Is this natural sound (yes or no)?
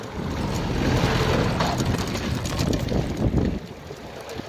yes